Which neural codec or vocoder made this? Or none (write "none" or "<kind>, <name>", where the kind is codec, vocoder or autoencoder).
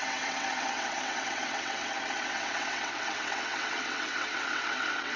vocoder, WaveNeXt